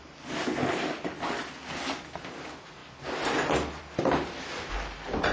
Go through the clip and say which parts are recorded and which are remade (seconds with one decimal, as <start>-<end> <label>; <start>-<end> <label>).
0.0-5.3 recorded